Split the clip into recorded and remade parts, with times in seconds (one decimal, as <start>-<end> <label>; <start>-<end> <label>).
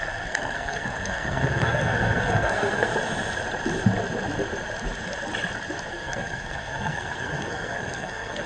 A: 0.0-2.9 remade; 2.9-5.9 recorded; 5.9-8.5 remade